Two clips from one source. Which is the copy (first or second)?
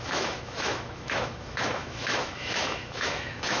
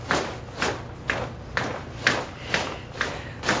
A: first